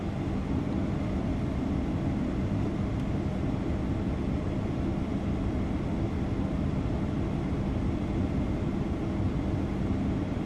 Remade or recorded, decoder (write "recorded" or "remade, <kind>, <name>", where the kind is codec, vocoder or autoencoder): recorded